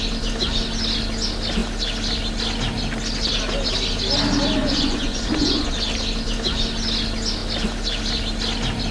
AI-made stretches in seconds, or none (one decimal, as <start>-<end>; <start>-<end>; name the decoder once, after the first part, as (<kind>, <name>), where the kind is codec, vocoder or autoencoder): 4.6-5.7 (vocoder, Vocos)